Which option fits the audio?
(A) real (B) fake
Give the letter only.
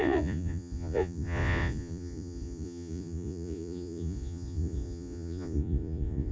B